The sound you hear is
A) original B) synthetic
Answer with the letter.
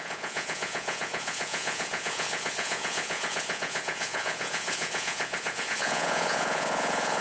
B